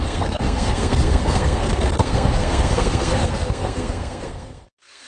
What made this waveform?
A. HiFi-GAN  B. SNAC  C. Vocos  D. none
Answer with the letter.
B